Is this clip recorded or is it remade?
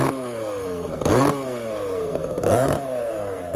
remade